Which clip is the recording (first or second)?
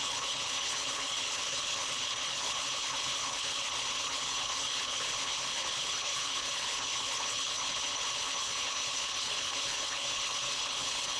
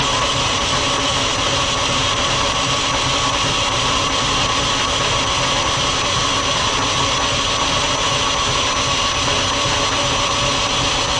second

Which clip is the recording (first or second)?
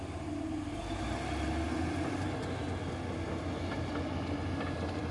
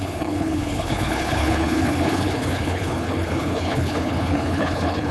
first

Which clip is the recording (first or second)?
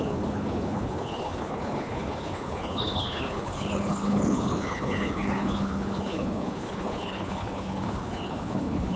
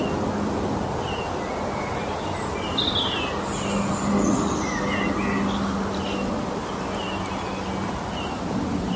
second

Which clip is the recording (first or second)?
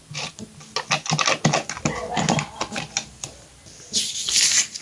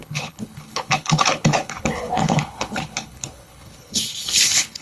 first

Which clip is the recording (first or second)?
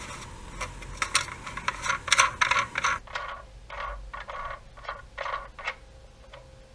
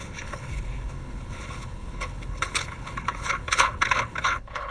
first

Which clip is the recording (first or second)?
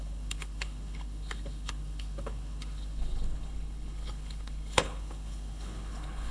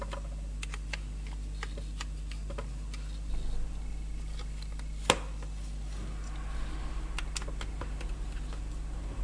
second